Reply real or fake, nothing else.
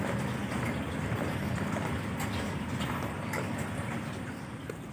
real